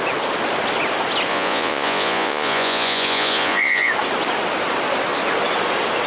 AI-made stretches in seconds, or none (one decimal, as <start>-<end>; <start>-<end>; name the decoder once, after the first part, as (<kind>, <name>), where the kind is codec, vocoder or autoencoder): 1.3-3.9 (vocoder, Vocos)